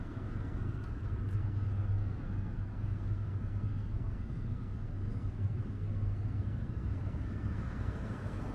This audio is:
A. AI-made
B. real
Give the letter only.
A